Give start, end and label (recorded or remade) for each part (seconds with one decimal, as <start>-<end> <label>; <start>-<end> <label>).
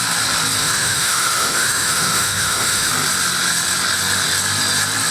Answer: 0.0-0.6 recorded; 0.6-2.9 remade; 2.9-5.1 recorded